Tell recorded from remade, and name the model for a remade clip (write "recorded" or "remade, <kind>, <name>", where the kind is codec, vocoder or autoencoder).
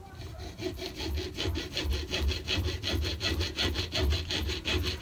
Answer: recorded